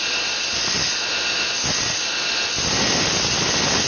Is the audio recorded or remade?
recorded